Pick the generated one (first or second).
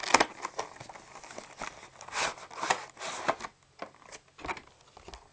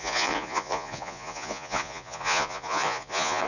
second